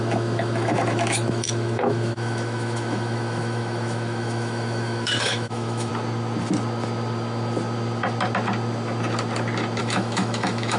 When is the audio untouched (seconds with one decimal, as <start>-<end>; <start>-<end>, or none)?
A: 5.9-9.8